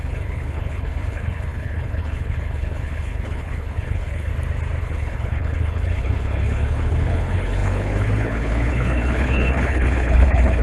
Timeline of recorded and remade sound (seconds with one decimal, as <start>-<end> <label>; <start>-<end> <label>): 0.0-4.3 remade; 4.3-4.8 recorded; 4.8-10.6 remade